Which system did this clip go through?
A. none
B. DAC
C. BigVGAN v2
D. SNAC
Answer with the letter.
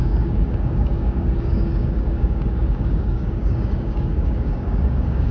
B